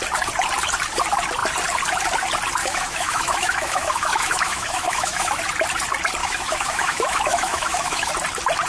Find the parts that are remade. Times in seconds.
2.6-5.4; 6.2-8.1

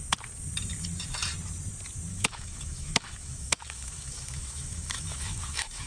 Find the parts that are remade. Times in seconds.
2.1-5.9

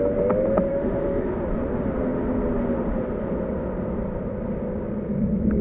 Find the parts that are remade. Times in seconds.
0.7-1.3

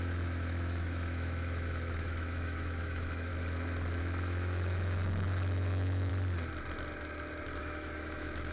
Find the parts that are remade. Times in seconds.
0.0-3.3; 4.0-6.1; 7.6-8.5

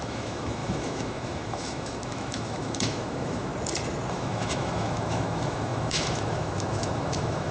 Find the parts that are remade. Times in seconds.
0.0-3.5; 4.1-7.5